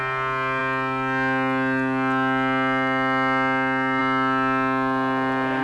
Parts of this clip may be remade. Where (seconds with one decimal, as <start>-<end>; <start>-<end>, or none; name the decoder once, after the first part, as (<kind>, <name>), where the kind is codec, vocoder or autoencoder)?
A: none